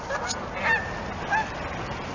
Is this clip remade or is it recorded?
recorded